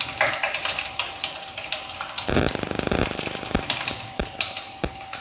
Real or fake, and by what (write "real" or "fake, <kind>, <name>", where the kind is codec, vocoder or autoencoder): fake, vocoder, BigVGAN v2